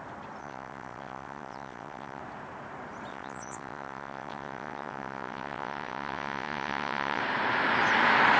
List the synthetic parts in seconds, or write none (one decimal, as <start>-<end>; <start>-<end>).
0.4-2.2; 3.1-7.2